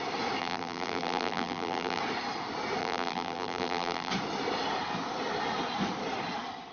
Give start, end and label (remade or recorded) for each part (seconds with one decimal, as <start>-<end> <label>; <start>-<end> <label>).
0.0-0.4 recorded; 0.4-2.0 remade; 2.0-2.8 recorded; 2.8-4.1 remade; 4.1-6.7 recorded